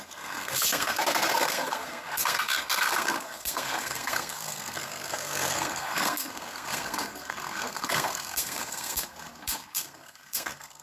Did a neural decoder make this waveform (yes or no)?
yes